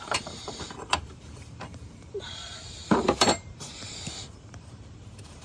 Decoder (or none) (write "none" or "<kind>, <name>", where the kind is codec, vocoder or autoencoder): vocoder, BigVGAN v2